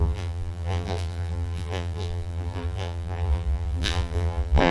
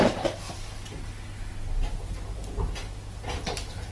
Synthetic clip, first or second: first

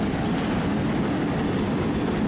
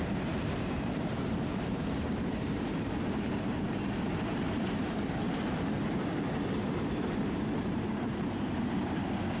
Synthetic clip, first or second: second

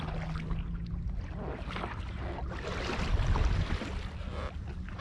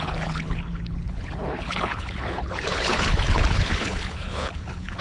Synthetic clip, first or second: second